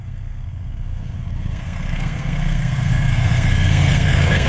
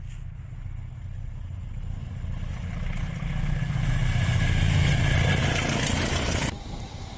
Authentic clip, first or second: second